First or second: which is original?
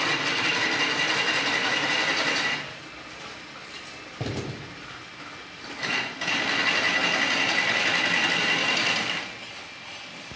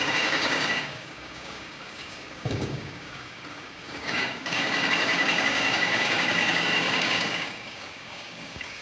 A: first